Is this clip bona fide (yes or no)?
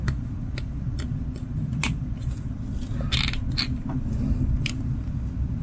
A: yes